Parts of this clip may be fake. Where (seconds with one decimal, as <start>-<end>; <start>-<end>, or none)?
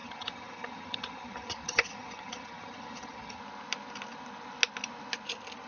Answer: 0.0-3.4